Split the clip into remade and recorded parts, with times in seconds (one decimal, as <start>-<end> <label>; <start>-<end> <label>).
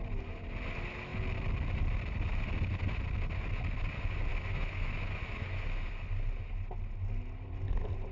0.0-4.3 recorded; 4.3-5.9 remade; 5.9-8.1 recorded